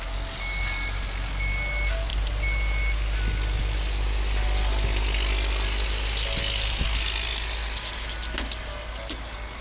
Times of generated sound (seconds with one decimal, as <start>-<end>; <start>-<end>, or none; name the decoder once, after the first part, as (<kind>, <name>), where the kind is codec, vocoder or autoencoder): none

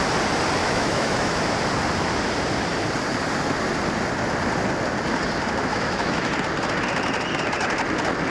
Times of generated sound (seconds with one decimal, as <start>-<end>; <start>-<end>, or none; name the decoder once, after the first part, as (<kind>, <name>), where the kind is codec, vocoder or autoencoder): 0.6-1.4 (autoencoder, DAC-VAE); 5.7-6.3

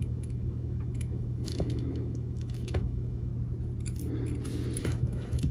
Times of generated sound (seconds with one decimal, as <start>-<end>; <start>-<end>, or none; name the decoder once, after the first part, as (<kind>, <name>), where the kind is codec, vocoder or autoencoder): 0.0-3.3 (autoencoder, DAC-VAE); 4.8-5.5

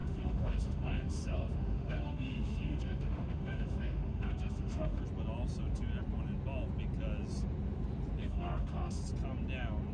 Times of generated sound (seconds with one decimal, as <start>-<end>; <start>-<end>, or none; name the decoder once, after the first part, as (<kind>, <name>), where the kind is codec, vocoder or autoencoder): 0.0-5.0 (autoencoder, DAC-VAE); 8.2-9.0